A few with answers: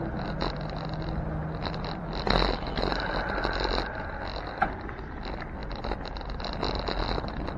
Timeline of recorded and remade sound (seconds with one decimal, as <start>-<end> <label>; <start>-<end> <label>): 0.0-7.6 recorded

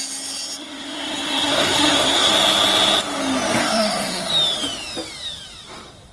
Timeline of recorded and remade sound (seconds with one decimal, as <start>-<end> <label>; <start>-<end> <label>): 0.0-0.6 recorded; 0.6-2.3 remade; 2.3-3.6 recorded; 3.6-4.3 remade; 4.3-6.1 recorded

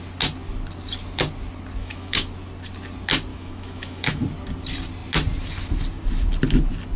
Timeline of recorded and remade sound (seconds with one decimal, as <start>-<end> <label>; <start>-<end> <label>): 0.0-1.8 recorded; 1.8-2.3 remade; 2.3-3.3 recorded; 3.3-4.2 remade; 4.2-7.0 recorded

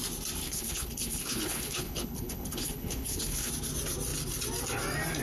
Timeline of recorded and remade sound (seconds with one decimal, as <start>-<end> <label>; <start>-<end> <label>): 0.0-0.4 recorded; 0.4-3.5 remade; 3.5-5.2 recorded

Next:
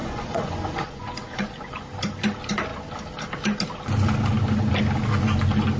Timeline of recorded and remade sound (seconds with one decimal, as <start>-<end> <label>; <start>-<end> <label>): 0.0-1.8 remade; 1.8-5.8 recorded

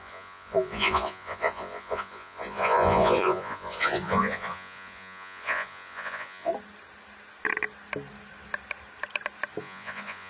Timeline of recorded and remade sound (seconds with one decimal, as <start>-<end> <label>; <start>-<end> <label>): 0.0-6.5 remade; 6.5-9.6 recorded; 9.6-10.3 remade

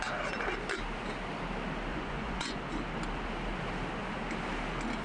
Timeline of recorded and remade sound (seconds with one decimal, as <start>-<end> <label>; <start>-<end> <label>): 0.0-1.9 recorded; 1.9-2.6 remade; 2.6-5.0 recorded

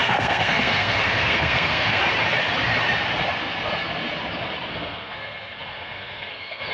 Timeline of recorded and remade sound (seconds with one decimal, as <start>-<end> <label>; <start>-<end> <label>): 0.0-2.0 remade; 2.0-4.7 recorded; 4.7-6.7 remade